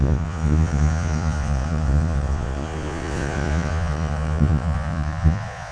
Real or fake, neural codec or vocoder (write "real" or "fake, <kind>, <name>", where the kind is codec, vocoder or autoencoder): fake, vocoder, Vocos